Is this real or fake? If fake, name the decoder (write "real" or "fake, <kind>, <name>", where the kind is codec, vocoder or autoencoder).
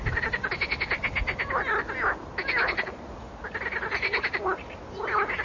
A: real